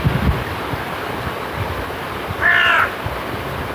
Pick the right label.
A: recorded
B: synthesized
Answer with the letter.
A